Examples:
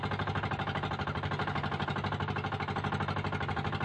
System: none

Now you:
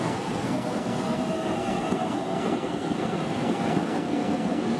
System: codec, SNAC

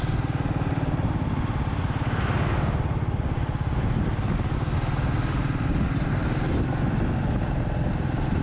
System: none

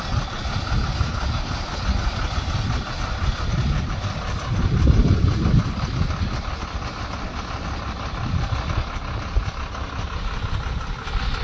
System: none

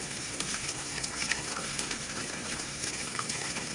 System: codec, SNAC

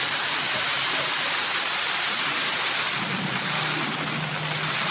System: none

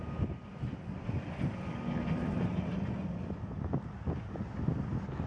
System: none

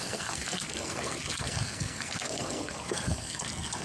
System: codec, SNAC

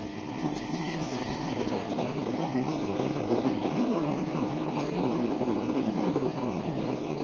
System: codec, SNAC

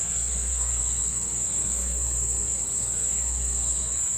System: codec, SNAC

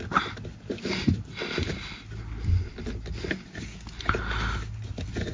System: none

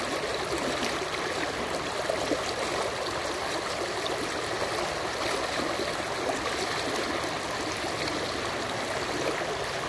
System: none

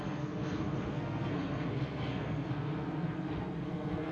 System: codec, SNAC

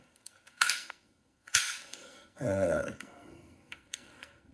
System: codec, SNAC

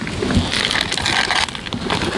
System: none